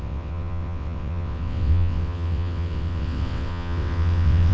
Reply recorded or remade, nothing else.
remade